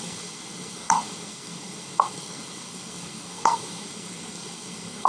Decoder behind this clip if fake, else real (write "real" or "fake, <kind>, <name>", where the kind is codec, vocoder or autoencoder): fake, codec, SNAC